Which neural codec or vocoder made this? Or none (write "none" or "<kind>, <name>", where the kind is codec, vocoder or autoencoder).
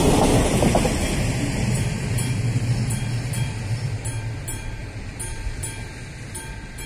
none